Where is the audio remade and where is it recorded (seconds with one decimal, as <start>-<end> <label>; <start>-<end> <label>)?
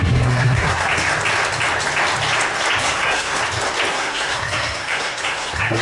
0.0-0.9 remade; 0.9-2.8 recorded; 2.8-3.4 remade; 3.4-3.9 recorded; 3.9-5.8 remade